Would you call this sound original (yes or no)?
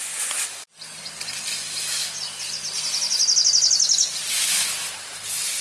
yes